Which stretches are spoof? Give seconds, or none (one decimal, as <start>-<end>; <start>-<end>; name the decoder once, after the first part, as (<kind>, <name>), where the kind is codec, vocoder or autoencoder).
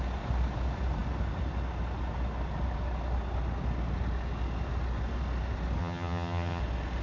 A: 5.8-6.6 (vocoder, HiFi-GAN)